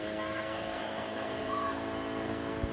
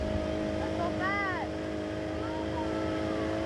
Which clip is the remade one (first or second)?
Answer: first